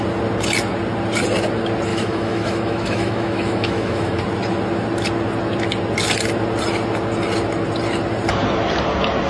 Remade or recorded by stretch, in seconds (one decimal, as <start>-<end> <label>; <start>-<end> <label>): 0.0-1.9 recorded; 1.9-4.2 remade; 4.2-9.3 recorded

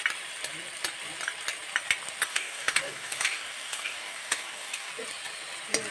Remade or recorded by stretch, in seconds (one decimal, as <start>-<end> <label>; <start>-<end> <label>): 0.0-2.3 recorded; 2.3-4.9 remade; 4.9-5.9 recorded

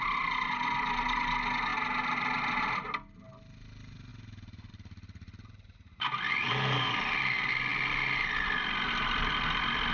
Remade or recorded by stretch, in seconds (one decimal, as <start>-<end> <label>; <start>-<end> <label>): 0.0-9.9 recorded

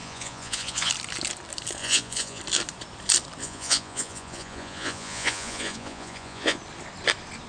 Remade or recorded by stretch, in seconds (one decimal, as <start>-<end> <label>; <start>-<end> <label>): 0.0-0.9 remade; 0.9-1.8 recorded; 1.8-2.4 remade; 2.4-3.4 recorded; 3.4-6.6 remade; 6.6-7.5 recorded

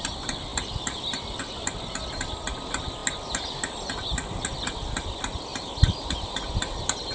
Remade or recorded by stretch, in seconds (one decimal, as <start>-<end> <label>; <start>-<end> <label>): 0.0-7.1 recorded

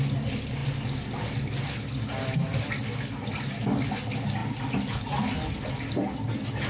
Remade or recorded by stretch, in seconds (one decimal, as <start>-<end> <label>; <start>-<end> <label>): 0.0-6.7 recorded

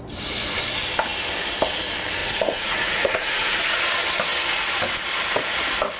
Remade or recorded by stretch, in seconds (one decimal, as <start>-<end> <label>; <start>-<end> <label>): 0.0-2.2 recorded; 2.2-3.8 remade; 3.8-6.0 recorded